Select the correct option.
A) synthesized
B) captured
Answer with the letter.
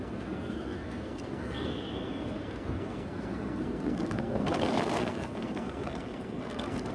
A